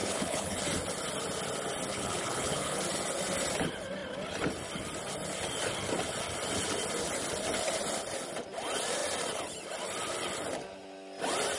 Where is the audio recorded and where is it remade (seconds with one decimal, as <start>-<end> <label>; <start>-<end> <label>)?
0.0-0.6 remade; 0.6-1.9 recorded; 1.9-2.8 remade; 2.8-11.6 recorded